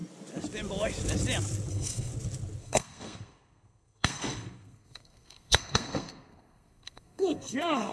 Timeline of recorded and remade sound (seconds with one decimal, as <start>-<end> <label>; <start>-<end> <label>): 0.0-1.7 recorded; 1.7-2.1 remade; 2.1-2.6 recorded; 2.6-7.9 remade